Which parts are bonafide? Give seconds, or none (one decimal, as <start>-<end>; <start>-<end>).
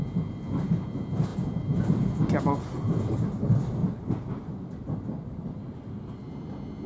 0.0-6.9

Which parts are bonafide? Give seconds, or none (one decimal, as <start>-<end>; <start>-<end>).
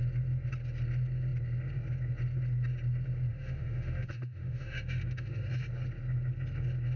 0.0-3.3; 5.5-7.0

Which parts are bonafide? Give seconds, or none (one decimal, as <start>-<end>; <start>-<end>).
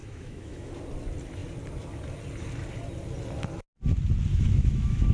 0.7-4.3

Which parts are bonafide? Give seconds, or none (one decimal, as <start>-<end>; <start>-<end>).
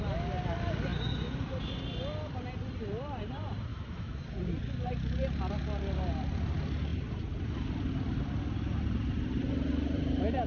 0.0-3.7; 4.2-10.5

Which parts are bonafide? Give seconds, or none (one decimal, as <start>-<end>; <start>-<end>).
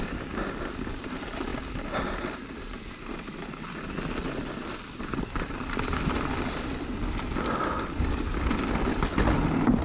0.0-9.8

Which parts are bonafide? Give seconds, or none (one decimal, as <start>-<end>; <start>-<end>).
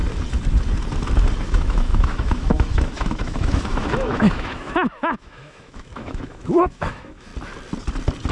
0.0-1.4; 7.3-8.3